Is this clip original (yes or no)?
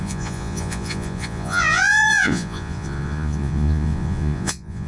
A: no